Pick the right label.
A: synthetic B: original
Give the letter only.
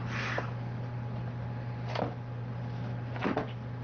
B